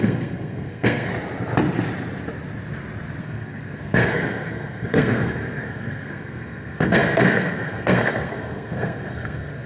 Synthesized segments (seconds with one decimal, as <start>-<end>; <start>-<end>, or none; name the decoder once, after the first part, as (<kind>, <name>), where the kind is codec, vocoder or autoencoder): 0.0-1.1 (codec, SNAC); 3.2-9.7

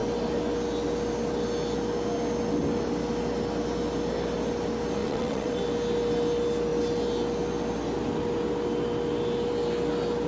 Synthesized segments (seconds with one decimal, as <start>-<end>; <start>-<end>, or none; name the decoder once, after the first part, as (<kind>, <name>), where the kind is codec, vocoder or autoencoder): 5.0-5.6 (vocoder, WaveNeXt)

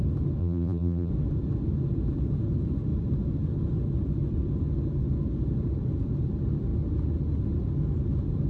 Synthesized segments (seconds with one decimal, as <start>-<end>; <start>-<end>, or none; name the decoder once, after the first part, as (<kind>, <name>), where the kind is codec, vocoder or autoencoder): 0.4-1.1 (vocoder, BigVGAN v2)